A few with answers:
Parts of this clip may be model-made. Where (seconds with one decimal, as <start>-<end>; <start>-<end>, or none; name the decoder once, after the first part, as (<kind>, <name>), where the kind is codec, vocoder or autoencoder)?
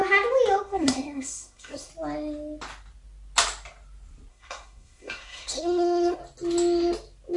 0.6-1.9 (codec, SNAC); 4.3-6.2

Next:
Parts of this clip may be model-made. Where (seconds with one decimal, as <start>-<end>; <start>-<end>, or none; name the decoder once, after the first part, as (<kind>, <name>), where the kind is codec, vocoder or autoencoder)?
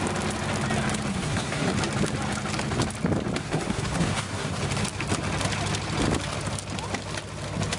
1.1-1.7 (codec, SNAC); 3.4-4.6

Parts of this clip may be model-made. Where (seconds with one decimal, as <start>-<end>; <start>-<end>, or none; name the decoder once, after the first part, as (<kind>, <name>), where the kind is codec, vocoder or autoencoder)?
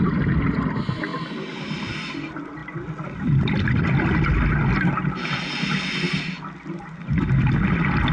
none